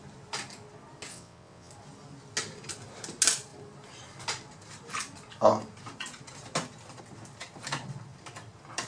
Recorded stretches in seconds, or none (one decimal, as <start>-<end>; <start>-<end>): 0.0-1.1; 1.7-8.9